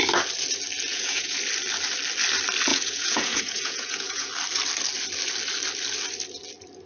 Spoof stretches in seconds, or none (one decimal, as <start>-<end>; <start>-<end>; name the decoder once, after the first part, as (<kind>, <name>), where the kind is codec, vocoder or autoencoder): 0.9-1.4 (vocoder, Vocos); 2.7-4.3